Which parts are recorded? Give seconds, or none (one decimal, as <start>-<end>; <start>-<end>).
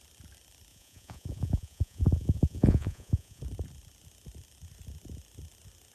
0.0-0.7; 3.4-5.9